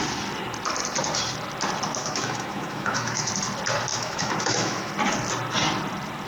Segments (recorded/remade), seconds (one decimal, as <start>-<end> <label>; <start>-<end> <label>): 0.0-2.0 recorded; 2.0-3.3 remade; 3.3-3.9 recorded; 3.9-4.9 remade; 4.9-6.3 recorded